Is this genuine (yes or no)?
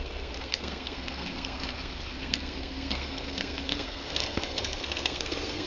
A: no